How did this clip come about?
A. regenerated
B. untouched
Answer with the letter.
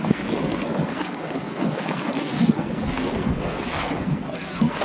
A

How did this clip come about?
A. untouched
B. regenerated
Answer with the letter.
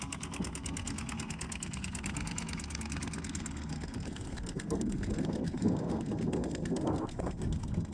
B